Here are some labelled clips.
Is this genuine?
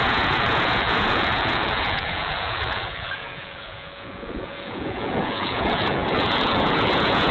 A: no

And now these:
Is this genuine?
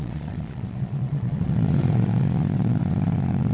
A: no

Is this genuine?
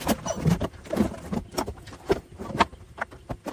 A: no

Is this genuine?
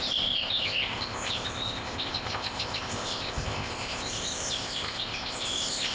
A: no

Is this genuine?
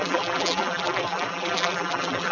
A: no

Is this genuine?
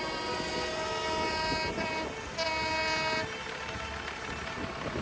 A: yes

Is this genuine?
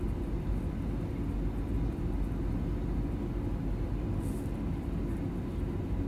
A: yes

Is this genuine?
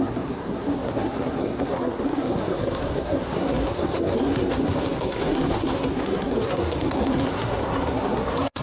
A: no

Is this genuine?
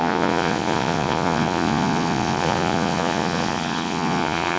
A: no